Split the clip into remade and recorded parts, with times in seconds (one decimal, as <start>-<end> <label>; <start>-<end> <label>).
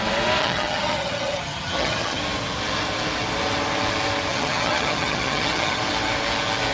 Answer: 0.0-0.4 recorded; 0.4-2.2 remade; 2.2-4.3 recorded; 4.3-5.8 remade; 5.8-6.7 recorded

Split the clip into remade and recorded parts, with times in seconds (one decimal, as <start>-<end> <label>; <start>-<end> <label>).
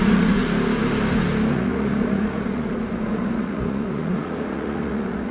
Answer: 0.0-0.4 remade; 0.4-1.5 recorded; 1.5-5.3 remade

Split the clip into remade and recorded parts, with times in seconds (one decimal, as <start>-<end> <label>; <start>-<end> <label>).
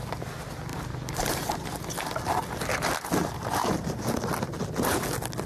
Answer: 0.0-3.6 recorded; 3.6-4.7 remade; 4.7-5.5 recorded